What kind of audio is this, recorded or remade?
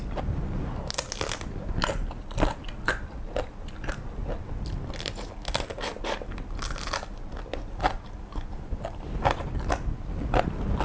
recorded